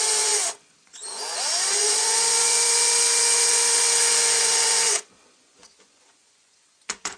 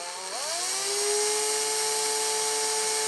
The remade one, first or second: first